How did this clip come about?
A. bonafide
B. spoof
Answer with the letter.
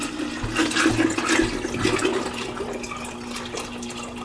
A